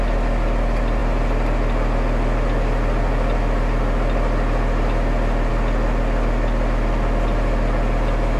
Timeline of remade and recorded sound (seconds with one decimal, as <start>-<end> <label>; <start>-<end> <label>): 0.0-8.4 recorded